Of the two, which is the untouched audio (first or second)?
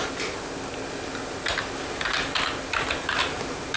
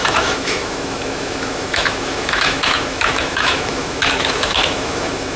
first